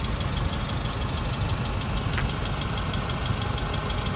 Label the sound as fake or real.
real